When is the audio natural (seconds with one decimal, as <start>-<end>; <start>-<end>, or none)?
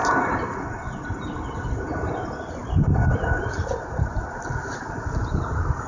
0.0-5.9